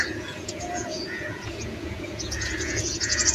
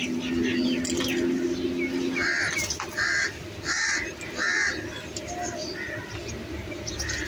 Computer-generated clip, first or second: first